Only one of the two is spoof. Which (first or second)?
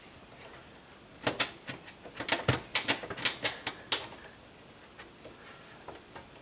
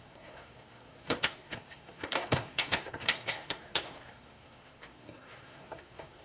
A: second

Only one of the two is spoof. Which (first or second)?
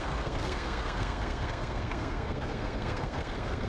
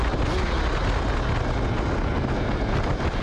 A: first